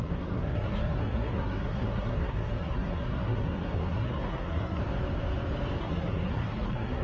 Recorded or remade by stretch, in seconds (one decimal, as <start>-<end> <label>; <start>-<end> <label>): 0.0-4.8 remade; 4.8-5.8 recorded; 5.8-7.0 remade